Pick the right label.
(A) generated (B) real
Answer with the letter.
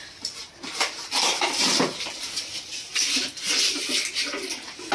B